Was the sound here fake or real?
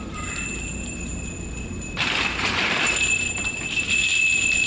real